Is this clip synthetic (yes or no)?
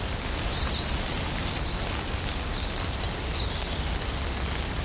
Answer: no